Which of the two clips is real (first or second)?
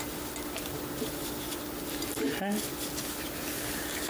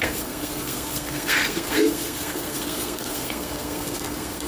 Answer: first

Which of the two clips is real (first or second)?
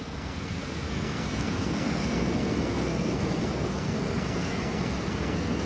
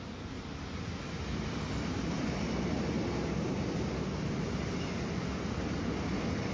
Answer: second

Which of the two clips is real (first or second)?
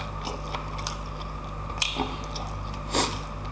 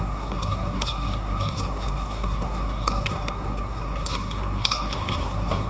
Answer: first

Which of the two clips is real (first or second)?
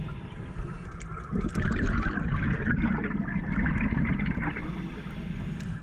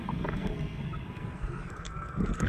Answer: first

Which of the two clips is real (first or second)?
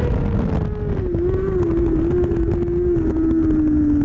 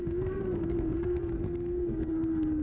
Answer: first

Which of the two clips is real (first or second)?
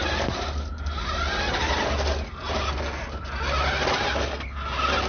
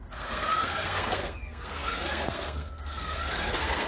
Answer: first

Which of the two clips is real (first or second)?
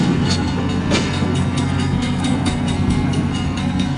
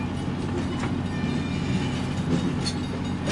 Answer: second